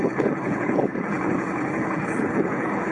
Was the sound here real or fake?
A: fake